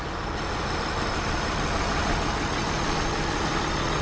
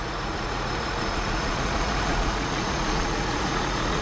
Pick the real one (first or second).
first